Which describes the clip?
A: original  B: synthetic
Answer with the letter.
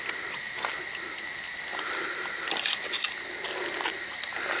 A